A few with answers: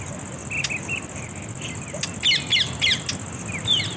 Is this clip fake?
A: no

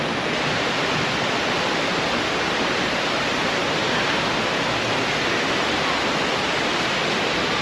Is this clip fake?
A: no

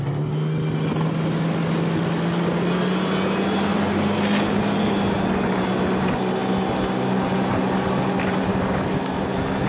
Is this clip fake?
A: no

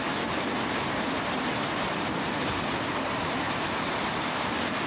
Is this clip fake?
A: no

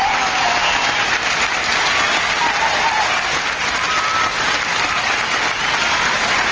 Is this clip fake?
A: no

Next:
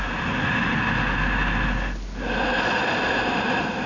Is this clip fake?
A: no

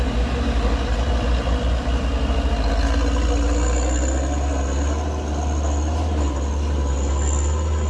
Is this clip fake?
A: no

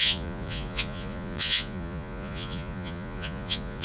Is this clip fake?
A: yes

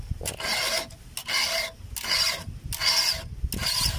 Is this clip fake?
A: no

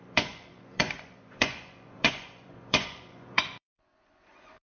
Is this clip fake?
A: yes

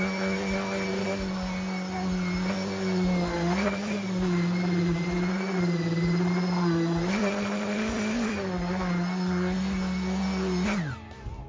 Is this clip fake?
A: no